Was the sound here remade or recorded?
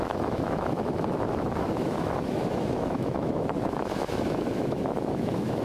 remade